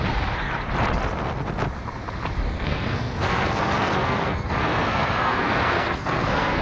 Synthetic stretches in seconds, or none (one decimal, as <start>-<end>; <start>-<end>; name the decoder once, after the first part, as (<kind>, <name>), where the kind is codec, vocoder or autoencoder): 2.5-6.6 (codec, SNAC)